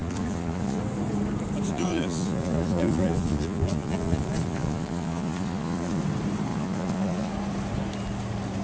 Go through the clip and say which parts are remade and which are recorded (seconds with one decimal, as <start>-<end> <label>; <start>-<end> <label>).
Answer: 0.0-0.8 remade; 0.8-1.7 recorded; 1.7-6.0 remade; 6.0-6.5 recorded; 6.5-7.3 remade; 7.3-8.6 recorded